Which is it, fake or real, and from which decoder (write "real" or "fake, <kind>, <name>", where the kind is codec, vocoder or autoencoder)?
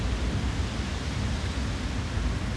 real